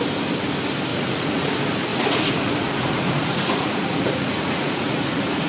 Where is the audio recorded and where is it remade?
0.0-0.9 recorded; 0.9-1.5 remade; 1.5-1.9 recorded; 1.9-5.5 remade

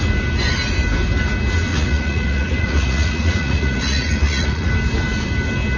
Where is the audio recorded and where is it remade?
0.0-1.7 recorded; 1.7-4.7 remade; 4.7-5.8 recorded

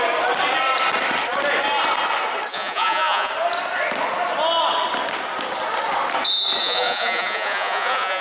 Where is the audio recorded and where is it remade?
0.0-2.5 recorded; 2.5-3.3 remade; 3.3-6.6 recorded; 6.6-8.2 remade

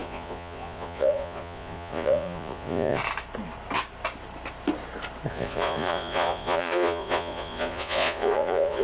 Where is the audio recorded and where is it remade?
0.0-3.0 remade; 3.0-5.3 recorded; 5.3-8.8 remade